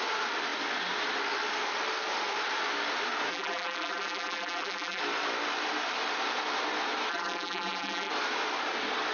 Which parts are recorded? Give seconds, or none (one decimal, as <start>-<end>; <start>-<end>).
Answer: 0.0-3.3; 5.0-7.1; 8.1-9.1